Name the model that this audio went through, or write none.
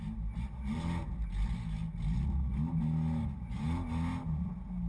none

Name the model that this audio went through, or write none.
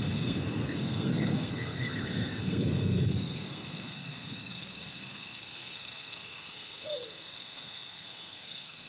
codec, SNAC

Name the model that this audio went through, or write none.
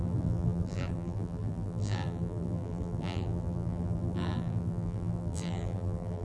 vocoder, BigVGAN v2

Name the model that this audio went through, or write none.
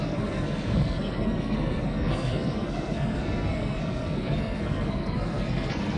codec, SNAC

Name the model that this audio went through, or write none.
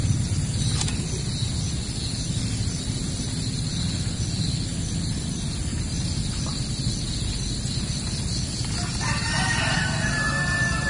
none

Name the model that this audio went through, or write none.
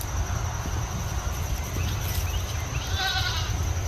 none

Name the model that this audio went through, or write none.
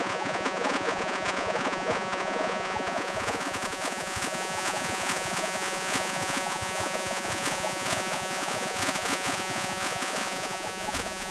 vocoder, Vocos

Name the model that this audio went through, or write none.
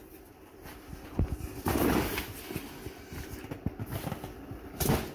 none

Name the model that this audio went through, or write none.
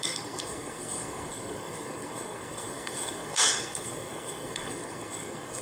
codec, SNAC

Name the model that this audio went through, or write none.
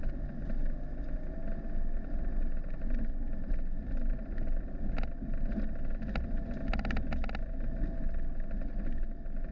none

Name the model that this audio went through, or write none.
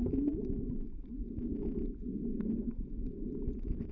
vocoder, Vocos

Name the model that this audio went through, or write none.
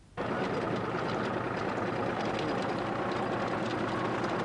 none